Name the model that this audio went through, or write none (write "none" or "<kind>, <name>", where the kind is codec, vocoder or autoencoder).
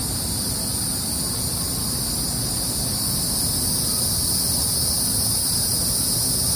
none